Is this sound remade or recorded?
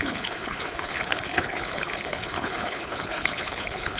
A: remade